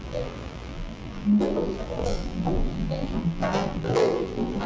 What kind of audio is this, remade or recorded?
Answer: remade